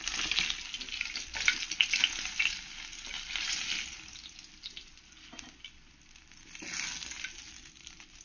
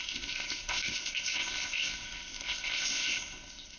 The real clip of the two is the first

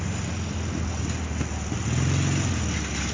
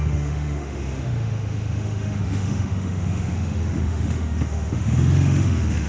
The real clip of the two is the first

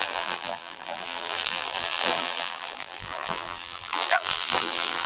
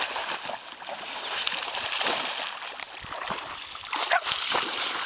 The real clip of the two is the second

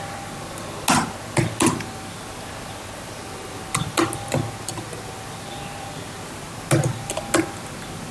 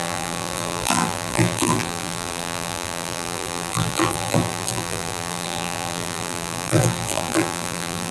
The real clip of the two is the first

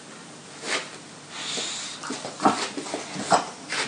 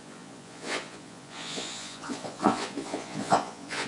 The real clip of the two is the first